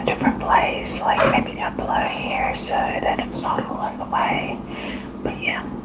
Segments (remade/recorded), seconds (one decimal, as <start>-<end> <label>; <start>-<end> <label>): 0.0-2.1 recorded; 2.1-4.0 remade; 4.0-5.8 recorded